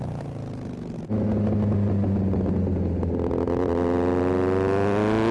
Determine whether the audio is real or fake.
real